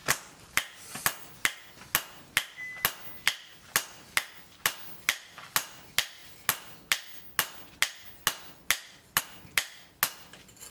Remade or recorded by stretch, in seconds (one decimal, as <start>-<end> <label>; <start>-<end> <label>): 0.0-10.7 recorded